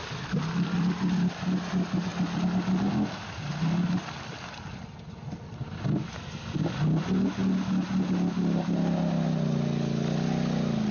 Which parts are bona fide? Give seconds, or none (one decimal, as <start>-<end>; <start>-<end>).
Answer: 0.0-10.9